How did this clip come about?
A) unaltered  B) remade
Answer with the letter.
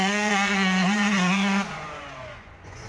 B